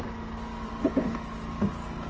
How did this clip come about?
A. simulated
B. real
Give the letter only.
B